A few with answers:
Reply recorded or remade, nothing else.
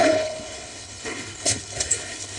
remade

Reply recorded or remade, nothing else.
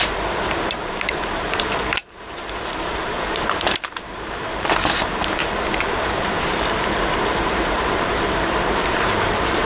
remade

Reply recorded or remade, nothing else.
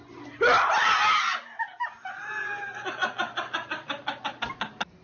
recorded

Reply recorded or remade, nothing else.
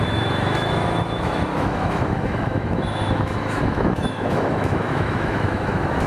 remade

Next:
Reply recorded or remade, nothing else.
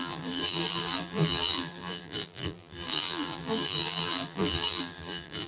remade